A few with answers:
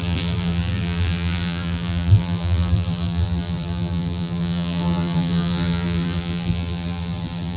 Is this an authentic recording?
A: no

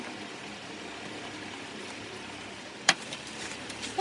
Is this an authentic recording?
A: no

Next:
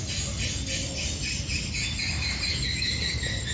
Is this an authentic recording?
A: yes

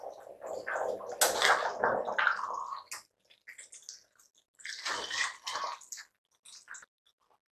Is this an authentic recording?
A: yes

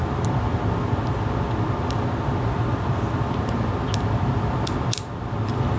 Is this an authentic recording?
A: yes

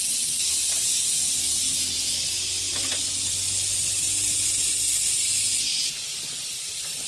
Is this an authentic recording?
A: yes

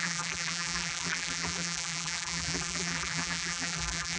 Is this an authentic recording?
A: no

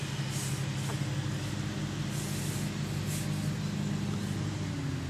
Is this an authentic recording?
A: yes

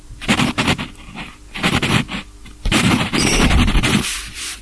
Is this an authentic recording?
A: yes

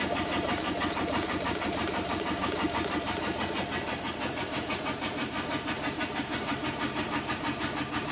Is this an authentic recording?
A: no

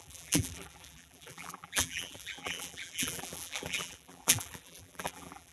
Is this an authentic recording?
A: no